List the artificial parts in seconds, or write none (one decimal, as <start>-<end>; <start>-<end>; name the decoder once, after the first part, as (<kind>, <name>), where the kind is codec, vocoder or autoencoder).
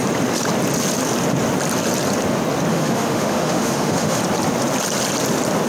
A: 2.7-4.2 (autoencoder, DAC-VAE)